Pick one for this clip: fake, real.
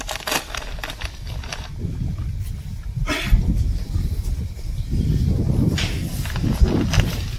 real